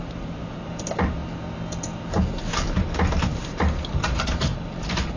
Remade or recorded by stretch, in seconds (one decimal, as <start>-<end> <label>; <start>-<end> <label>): 0.0-1.2 remade; 1.2-2.8 recorded; 2.8-5.2 remade

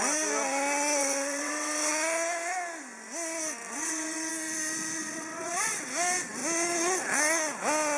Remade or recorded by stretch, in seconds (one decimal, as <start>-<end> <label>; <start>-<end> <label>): 0.0-1.0 recorded; 1.0-1.9 remade; 1.9-3.7 recorded; 3.7-4.3 remade; 4.3-5.0 recorded; 5.0-5.9 remade; 5.9-8.0 recorded

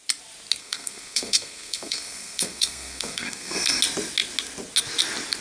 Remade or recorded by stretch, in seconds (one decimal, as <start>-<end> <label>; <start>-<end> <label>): 0.0-0.6 recorded; 0.6-3.8 remade; 3.8-5.4 recorded

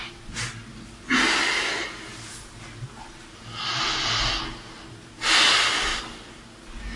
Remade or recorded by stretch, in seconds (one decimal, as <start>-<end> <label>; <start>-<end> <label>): 0.0-7.0 recorded